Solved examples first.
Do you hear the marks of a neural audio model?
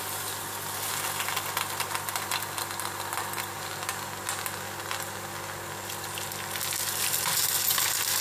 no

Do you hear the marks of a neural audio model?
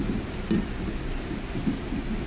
no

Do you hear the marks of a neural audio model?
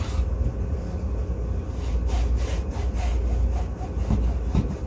no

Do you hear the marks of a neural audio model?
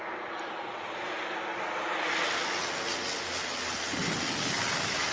no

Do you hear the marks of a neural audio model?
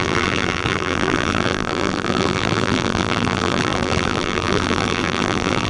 yes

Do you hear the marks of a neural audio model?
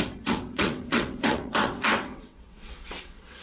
yes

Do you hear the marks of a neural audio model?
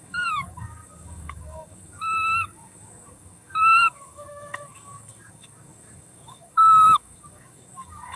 yes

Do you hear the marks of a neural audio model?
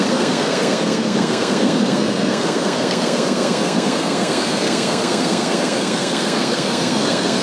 yes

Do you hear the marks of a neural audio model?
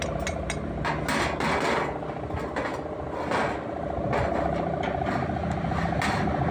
no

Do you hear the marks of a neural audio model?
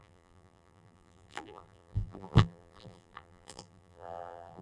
yes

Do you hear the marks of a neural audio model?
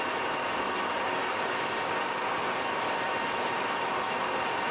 no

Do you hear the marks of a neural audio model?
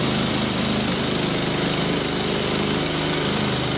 yes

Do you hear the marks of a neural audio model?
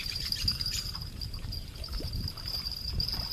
yes